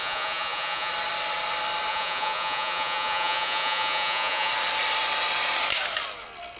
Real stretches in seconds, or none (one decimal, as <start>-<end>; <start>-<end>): 0.9-1.9; 4.5-6.6